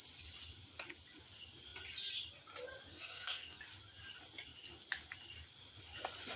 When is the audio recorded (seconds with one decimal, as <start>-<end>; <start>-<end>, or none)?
0.0-2.9; 3.6-6.4